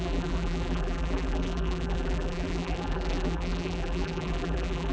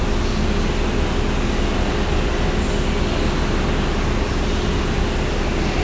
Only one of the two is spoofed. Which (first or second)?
first